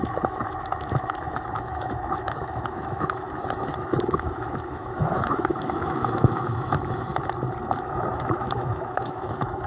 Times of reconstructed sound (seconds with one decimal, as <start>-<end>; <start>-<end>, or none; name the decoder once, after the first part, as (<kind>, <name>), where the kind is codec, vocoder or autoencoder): 0.0-7.1 (autoencoder, DAC-VAE); 7.8-9.7

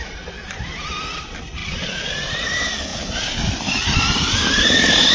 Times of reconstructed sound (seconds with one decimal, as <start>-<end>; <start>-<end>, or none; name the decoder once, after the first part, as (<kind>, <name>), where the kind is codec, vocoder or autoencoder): none

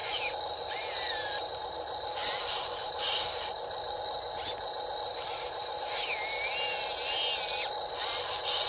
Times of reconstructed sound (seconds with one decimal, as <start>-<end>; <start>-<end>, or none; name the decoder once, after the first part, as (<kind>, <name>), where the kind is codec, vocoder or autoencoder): 0.0-4.0 (vocoder, BigVGAN v2); 5.1-5.9

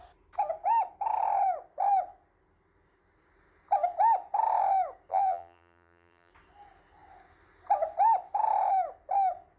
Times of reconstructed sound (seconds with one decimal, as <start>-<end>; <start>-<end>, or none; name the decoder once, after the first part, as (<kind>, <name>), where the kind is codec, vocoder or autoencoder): 5.1-6.3 (vocoder, BigVGAN v2)